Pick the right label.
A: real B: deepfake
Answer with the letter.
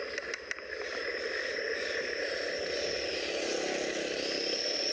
A